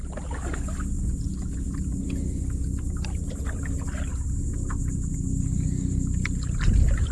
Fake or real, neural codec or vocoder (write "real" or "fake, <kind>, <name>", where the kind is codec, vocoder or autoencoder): real